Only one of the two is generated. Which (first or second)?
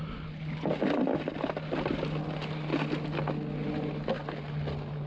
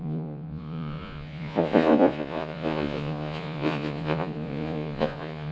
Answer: second